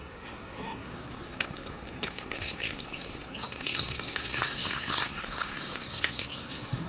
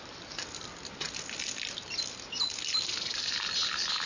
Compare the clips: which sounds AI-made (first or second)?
first